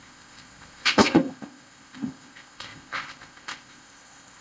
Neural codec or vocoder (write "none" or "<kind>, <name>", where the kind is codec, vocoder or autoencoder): codec, ZipCodec